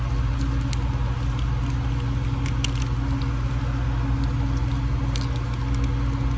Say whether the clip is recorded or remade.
recorded